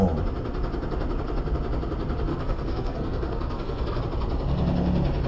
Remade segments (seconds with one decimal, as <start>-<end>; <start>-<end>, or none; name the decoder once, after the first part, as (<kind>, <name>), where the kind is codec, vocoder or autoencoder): 2.3-4.0 (codec, SNAC)